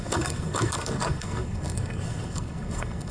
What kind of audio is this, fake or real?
fake